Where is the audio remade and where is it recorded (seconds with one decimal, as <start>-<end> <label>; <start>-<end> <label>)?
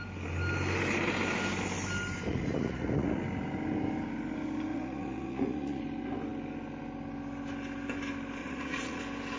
0.0-2.3 recorded; 2.3-3.2 remade; 3.2-4.7 recorded; 4.7-5.8 remade; 5.8-8.4 recorded; 8.4-9.0 remade; 9.0-9.4 recorded